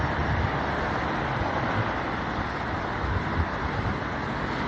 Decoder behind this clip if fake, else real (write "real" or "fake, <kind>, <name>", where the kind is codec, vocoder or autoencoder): real